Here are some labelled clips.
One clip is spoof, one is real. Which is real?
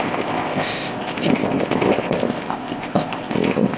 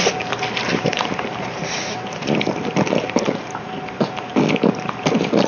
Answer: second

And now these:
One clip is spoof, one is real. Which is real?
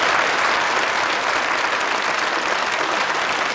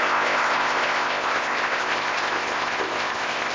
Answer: first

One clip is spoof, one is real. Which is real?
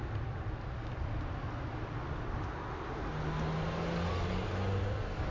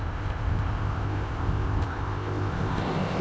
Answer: first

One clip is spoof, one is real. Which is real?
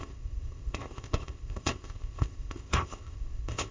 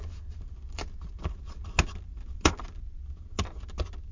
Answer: second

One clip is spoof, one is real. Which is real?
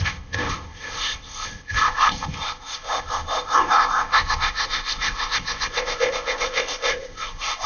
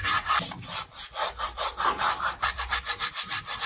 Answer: second